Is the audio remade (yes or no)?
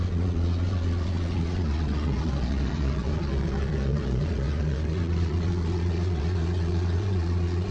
yes